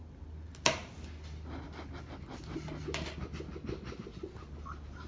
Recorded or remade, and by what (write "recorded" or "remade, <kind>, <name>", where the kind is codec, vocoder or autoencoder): recorded